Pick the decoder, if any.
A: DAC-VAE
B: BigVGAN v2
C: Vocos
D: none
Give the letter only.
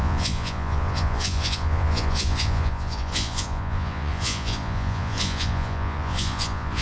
C